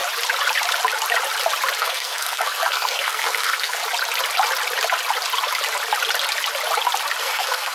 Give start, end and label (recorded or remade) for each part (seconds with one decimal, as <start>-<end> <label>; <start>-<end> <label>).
0.0-1.8 recorded; 1.8-3.8 remade; 3.8-7.2 recorded; 7.2-7.7 remade